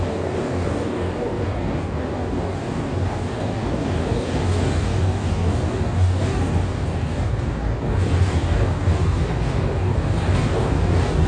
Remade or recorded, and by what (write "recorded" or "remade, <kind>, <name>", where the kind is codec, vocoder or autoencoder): remade, codec, DAC